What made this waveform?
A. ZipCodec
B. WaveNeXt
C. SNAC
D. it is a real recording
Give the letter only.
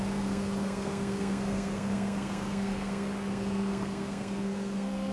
C